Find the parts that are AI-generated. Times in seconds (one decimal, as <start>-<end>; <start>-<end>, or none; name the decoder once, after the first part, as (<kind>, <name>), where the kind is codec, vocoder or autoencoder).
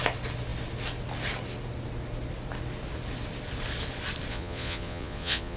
4.3-5.6 (vocoder, Vocos)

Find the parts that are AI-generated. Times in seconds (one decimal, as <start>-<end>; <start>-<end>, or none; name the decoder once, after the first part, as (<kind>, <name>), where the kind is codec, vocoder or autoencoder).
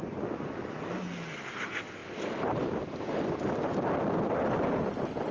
none